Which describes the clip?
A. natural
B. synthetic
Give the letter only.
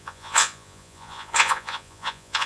B